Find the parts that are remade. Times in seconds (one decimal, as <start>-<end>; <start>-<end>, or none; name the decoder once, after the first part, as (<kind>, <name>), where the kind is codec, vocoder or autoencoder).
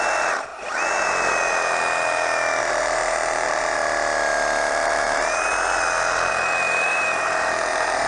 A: 0.0-0.5 (vocoder, BigVGAN v2); 2.6-3.8; 4.7-5.5; 6.3-8.1